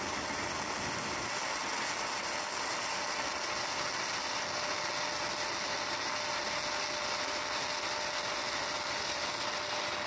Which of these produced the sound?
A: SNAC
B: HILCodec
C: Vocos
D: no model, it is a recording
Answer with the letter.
D